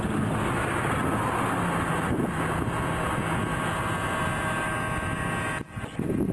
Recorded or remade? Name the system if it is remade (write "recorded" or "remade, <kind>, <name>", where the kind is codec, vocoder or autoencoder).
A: recorded